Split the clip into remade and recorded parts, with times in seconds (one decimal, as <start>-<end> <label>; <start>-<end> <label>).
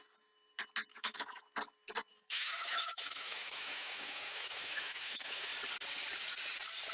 0.0-0.9 recorded; 0.9-1.4 remade; 1.4-2.1 recorded; 2.1-5.5 remade; 5.5-6.9 recorded